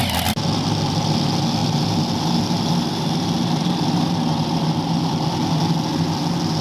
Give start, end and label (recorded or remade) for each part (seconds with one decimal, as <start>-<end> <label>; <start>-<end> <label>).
0.0-6.6 recorded